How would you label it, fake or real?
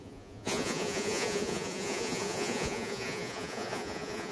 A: fake